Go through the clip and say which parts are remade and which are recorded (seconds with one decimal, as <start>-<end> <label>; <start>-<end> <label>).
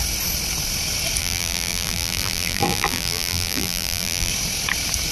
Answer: 0.0-1.2 recorded; 1.2-4.3 remade; 4.3-5.1 recorded